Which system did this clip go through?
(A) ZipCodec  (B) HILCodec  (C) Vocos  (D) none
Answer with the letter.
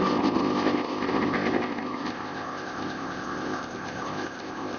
A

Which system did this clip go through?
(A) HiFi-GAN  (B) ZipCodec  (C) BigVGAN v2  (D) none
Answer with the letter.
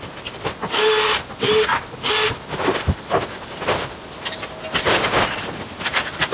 D